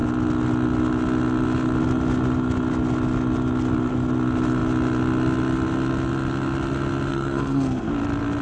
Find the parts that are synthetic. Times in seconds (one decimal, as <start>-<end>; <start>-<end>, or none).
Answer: 7.1-7.9